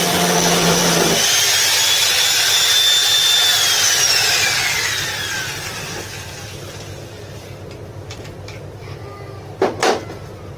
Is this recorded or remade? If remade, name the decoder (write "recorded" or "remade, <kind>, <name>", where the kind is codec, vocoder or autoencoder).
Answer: recorded